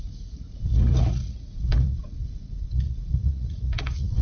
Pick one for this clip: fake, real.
fake